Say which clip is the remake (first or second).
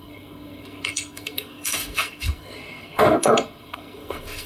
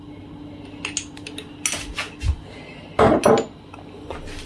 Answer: first